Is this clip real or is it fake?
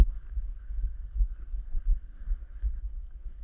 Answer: fake